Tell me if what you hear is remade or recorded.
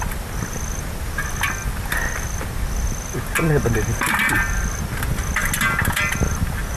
recorded